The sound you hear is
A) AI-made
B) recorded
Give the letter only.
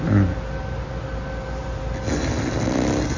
B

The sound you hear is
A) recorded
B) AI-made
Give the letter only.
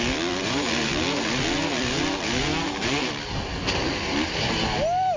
A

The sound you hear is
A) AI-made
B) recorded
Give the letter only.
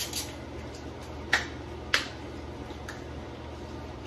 B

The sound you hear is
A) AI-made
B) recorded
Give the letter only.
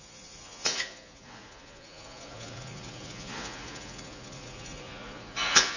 A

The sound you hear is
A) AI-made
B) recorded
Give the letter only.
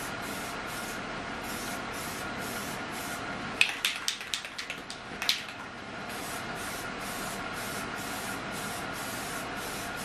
B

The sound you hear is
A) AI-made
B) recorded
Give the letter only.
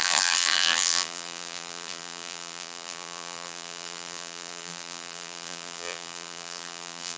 A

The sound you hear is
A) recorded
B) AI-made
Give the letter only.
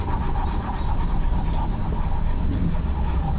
A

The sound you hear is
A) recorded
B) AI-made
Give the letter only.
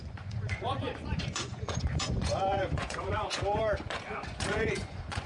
B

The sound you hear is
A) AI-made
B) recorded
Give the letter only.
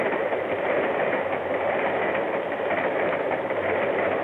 A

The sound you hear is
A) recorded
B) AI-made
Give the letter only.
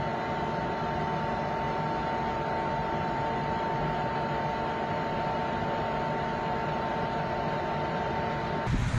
A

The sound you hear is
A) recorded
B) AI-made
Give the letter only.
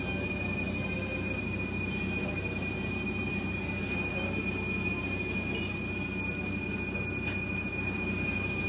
A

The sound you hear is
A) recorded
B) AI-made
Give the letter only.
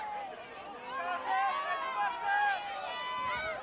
A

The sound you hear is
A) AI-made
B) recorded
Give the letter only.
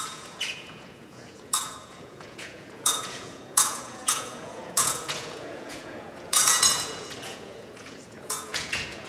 A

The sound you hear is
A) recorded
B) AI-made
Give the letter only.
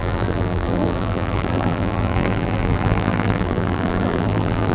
B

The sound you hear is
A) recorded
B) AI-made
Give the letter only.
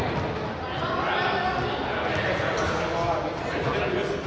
A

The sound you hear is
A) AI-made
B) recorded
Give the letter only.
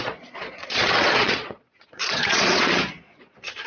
A